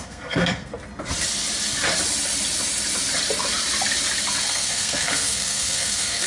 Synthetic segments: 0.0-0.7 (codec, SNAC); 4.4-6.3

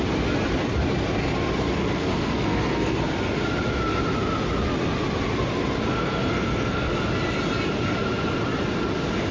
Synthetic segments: 1.8-3.0 (codec, SNAC); 5.9-6.9

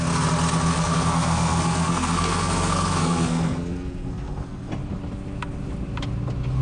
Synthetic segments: 0.7-4.7 (codec, SNAC)

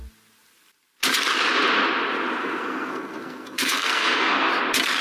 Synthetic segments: 2.4-4.5 (codec, SNAC)

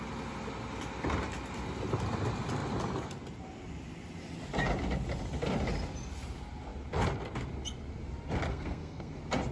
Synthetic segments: 8.5-9.1 (codec, SNAC)